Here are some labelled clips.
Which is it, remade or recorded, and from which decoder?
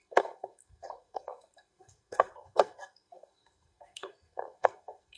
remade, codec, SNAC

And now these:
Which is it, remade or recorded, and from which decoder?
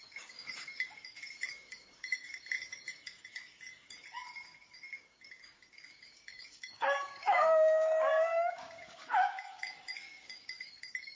remade, codec, DAC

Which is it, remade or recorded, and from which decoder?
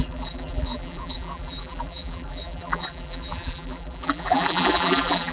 remade, vocoder, BigVGAN v2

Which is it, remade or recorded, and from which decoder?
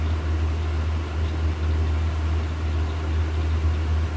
recorded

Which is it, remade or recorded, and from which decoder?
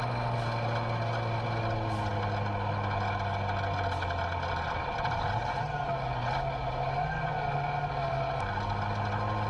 recorded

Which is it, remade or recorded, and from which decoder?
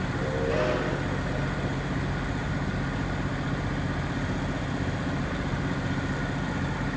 recorded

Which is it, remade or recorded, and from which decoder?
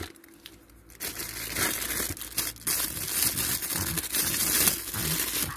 recorded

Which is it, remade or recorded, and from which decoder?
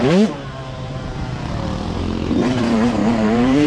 remade, vocoder, BigVGAN v2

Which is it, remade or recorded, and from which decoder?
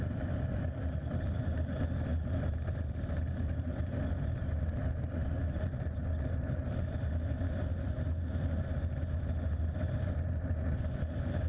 recorded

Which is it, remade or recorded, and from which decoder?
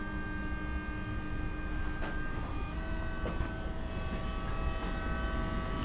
recorded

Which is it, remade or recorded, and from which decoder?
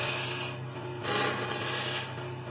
recorded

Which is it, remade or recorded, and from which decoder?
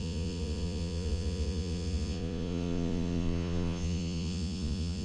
remade, vocoder, Vocos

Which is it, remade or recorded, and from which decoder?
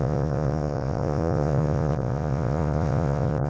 remade, vocoder, Vocos